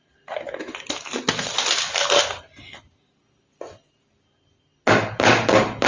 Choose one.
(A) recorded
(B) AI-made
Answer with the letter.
A